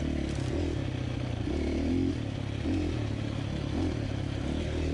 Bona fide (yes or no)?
yes